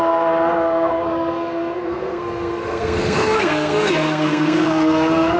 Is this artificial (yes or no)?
yes